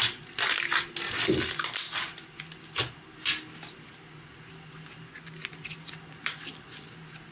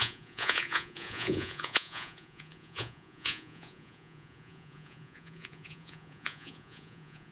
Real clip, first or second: first